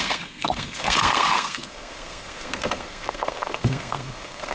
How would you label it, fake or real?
fake